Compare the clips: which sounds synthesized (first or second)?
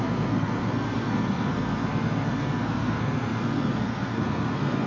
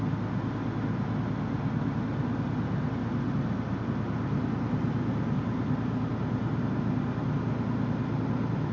first